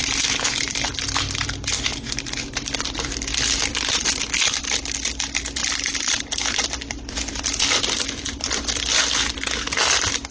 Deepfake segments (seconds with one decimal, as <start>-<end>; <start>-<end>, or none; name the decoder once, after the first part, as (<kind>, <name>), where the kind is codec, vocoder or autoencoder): 0.0-0.9 (vocoder, BigVGAN v2); 3.7-4.4; 5.6-9.5